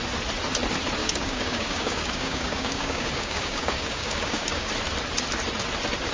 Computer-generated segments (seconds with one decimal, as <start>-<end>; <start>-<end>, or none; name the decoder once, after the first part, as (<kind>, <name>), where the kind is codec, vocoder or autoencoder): 1.0-4.7 (codec, DAC)